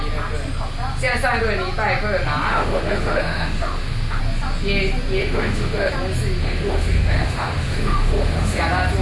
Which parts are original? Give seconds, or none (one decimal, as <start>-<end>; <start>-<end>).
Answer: 0.0-2.5; 4.2-5.2; 5.9-6.4; 8.6-9.0